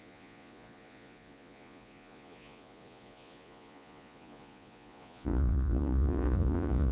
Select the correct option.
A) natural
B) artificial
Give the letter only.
B